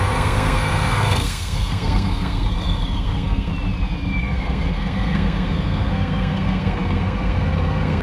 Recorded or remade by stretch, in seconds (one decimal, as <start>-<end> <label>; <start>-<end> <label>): 0.0-3.5 remade; 3.5-4.2 recorded; 4.2-8.0 remade